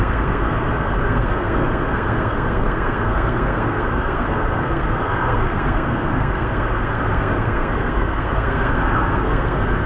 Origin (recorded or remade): remade